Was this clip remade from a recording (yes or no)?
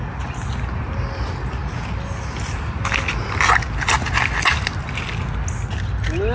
no